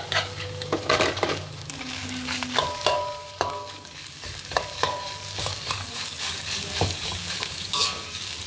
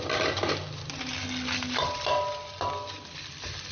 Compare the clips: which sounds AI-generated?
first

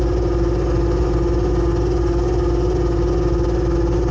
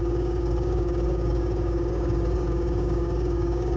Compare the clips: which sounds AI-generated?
second